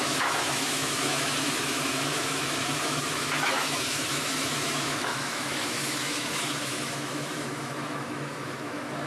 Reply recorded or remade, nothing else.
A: remade